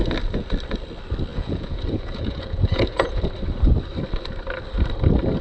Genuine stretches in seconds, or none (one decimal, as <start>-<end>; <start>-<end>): 0.0-1.3; 3.2-5.4